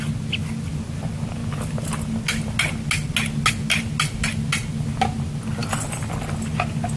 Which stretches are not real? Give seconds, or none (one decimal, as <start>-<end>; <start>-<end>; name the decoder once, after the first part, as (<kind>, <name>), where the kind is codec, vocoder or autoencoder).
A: none